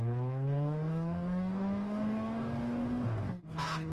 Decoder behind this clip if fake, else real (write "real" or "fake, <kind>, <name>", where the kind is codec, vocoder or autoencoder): fake, codec, DAC